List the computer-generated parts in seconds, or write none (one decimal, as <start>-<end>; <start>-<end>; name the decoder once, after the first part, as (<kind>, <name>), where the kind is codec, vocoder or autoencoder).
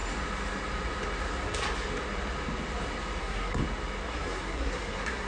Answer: 3.2-3.6 (codec, SNAC); 4.1-5.3